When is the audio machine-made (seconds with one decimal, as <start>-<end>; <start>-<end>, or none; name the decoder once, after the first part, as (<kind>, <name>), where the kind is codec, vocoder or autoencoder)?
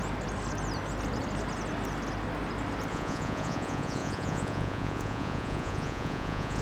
2.9-6.6 (vocoder, Vocos)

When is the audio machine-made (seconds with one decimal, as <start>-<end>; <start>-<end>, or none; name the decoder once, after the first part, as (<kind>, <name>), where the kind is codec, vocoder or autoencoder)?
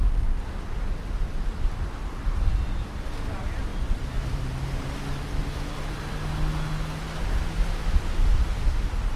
3.7-5.4 (vocoder, BigVGAN v2)